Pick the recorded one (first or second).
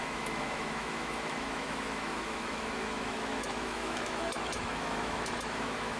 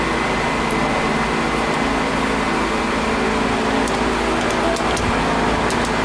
second